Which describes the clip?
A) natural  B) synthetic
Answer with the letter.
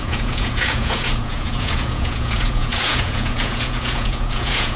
B